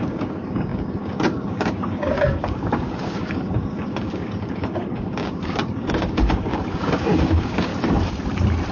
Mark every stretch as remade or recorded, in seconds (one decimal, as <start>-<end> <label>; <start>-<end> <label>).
0.0-7.7 remade; 7.7-8.7 recorded